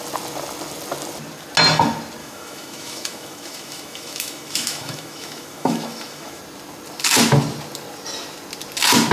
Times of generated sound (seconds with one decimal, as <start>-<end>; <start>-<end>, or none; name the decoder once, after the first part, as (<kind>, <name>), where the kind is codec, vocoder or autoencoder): 2.2-6.4 (autoencoder, DAC-VAE)